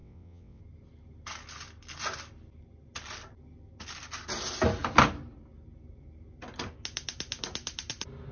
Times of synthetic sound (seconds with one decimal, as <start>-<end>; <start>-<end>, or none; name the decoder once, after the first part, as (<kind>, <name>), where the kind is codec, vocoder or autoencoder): 0.0-0.6 (vocoder, WaveNeXt)